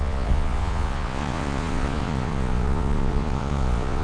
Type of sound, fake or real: fake